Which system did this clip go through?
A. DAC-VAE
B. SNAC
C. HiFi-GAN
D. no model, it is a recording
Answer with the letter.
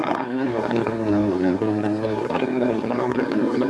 B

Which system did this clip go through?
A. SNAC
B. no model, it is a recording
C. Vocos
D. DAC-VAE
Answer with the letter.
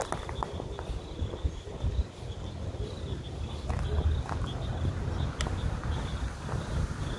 B